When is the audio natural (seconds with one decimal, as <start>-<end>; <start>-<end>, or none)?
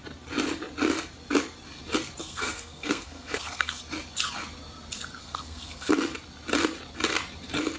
0.0-2.2; 3.8-5.2; 5.9-7.8